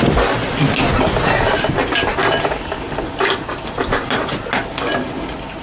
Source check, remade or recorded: recorded